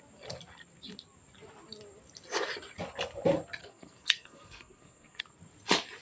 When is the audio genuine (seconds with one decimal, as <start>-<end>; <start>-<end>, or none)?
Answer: 0.0-3.6; 5.2-6.0